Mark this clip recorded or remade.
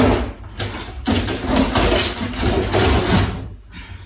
recorded